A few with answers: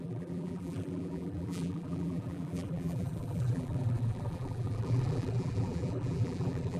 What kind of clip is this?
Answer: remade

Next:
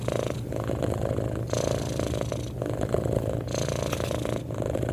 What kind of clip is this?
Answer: recorded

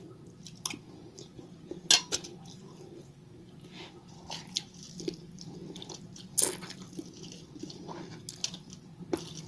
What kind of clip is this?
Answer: recorded